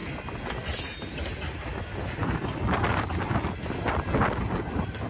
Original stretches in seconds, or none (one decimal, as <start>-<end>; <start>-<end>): 0.0-5.1